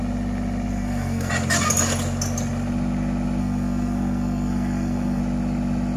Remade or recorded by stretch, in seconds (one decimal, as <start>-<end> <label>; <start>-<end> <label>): 0.0-0.7 recorded; 0.7-1.3 remade; 1.3-3.4 recorded; 3.4-5.2 remade; 5.2-6.0 recorded

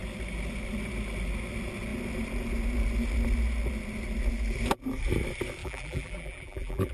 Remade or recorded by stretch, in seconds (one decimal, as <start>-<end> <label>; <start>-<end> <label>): 0.0-5.6 recorded; 5.6-6.9 remade

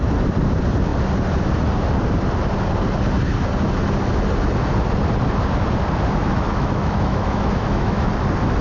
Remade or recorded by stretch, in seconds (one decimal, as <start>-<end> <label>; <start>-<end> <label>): 0.0-6.2 recorded; 6.2-8.1 remade; 8.1-8.6 recorded

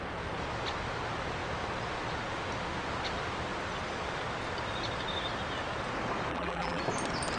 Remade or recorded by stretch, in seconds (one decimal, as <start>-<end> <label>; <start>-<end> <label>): 0.0-6.3 recorded; 6.3-6.8 remade; 6.8-7.4 recorded